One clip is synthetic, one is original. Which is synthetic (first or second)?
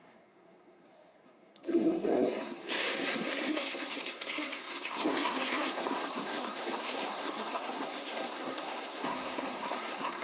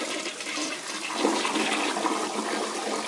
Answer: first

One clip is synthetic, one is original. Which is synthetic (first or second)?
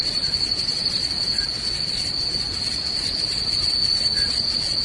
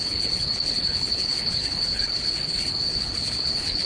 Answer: second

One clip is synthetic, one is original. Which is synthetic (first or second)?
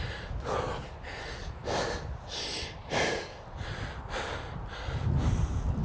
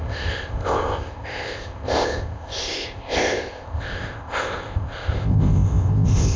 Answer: second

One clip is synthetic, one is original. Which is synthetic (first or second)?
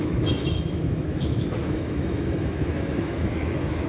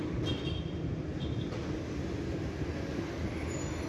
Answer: first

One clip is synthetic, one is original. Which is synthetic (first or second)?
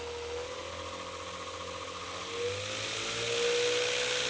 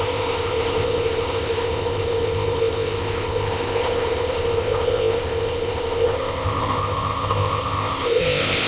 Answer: second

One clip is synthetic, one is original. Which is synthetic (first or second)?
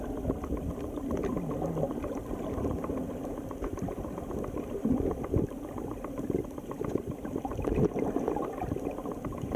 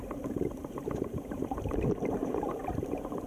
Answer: second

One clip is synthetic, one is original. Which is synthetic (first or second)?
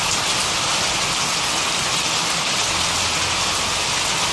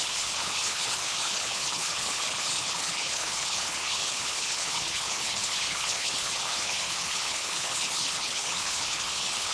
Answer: second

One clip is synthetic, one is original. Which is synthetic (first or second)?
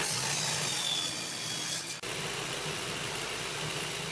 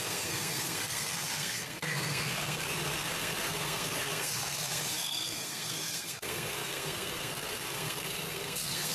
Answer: second